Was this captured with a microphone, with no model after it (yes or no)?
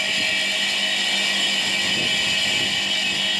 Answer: yes